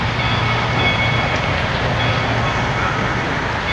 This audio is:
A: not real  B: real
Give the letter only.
B